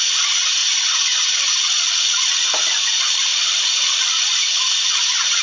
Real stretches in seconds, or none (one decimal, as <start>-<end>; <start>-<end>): 0.0-5.4